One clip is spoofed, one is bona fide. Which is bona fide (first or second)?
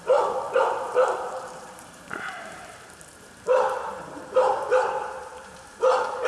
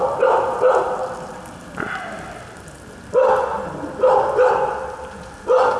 second